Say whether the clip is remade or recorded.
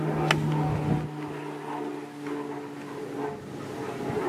recorded